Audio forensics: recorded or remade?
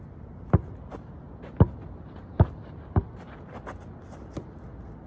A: recorded